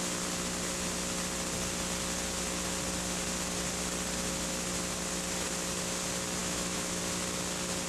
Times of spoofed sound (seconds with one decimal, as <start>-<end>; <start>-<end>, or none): 6.4-7.0